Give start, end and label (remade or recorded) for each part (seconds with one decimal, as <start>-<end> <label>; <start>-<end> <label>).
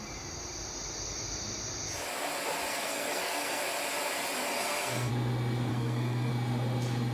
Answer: 0.0-2.7 recorded; 2.7-3.6 remade; 3.6-4.5 recorded; 4.5-5.1 remade; 5.1-5.7 recorded; 5.7-6.3 remade; 6.3-7.1 recorded